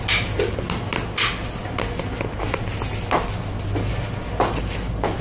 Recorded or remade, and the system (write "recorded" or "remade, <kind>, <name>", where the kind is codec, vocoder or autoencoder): recorded